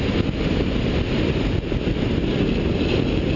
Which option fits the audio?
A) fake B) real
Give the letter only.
B